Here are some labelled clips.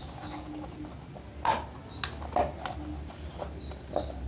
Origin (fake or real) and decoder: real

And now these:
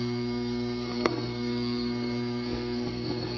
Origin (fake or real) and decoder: fake, codec, SNAC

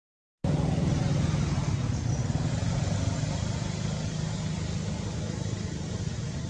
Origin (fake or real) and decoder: real